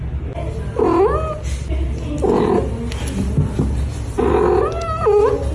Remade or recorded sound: recorded